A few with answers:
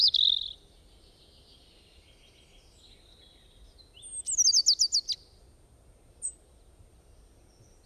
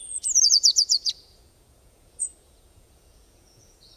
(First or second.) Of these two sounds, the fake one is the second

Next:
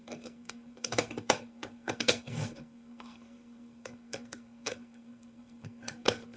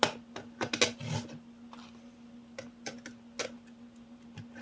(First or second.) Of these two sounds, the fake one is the first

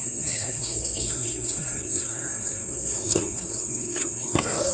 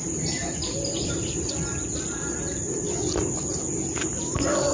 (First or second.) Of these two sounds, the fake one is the first